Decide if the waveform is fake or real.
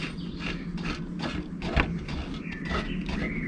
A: real